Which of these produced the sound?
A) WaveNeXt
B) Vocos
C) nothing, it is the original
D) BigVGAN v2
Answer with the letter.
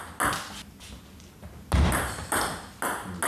C